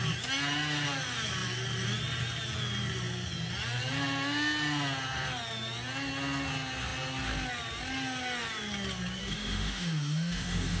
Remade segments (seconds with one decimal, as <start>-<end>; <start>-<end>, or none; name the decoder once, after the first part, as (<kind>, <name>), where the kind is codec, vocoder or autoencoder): 9.2-10.8 (autoencoder, DAC-VAE)